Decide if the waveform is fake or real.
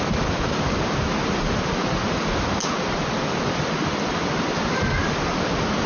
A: real